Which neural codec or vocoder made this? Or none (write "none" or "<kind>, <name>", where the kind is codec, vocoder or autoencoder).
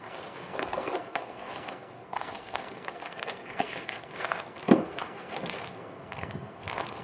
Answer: codec, SNAC